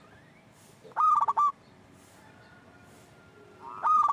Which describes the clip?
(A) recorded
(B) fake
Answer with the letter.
A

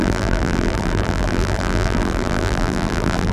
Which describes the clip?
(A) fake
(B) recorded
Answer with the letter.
A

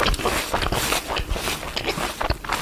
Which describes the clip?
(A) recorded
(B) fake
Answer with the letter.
A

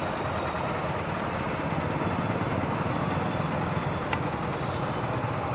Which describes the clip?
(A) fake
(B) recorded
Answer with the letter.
B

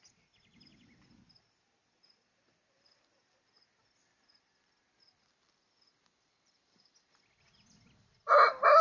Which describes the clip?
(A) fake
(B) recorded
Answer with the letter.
B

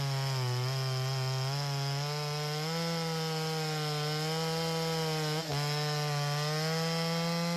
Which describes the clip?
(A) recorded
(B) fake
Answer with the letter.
A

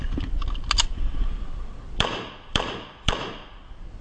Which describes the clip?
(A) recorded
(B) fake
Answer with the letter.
B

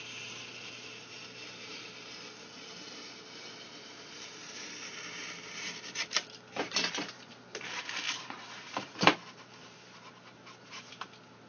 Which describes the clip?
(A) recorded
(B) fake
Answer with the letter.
B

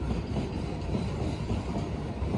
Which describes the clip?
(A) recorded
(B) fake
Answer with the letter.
B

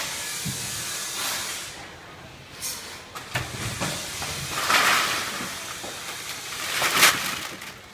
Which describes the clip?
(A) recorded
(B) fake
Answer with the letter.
A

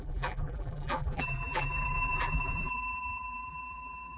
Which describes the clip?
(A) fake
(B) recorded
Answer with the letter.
A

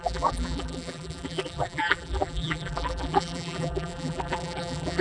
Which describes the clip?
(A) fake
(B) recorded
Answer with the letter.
A